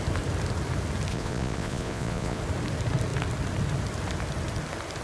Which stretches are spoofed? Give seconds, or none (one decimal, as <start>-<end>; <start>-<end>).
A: 1.1-2.4

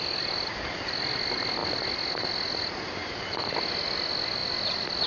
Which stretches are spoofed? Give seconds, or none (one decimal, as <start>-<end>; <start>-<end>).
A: none